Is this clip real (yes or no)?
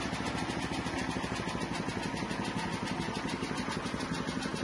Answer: yes